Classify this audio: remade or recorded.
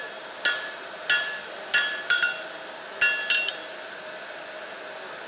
recorded